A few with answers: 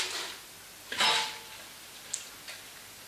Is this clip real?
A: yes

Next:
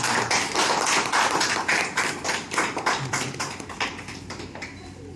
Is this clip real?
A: no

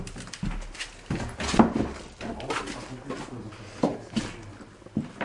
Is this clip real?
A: yes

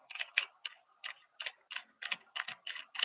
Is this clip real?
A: yes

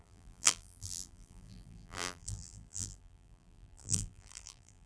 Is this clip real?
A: no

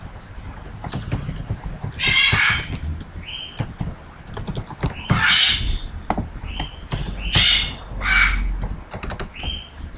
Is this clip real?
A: yes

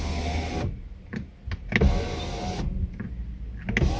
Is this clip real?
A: yes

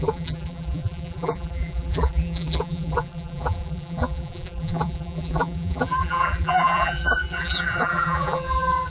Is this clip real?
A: no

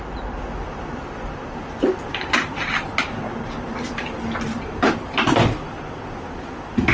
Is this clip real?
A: yes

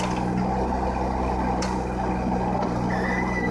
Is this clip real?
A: yes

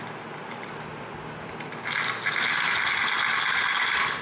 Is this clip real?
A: yes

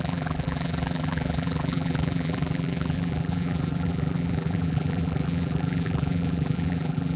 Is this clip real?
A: no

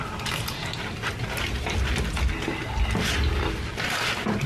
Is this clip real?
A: yes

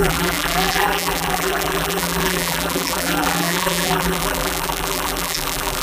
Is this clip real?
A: no